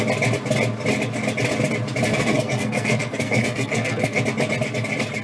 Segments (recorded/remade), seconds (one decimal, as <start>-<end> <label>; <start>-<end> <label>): 0.0-2.1 recorded; 2.1-4.2 remade; 4.2-5.2 recorded